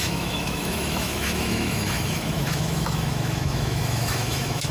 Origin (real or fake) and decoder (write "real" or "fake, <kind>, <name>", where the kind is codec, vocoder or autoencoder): fake, autoencoder, DAC-VAE